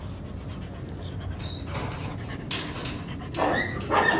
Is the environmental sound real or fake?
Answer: real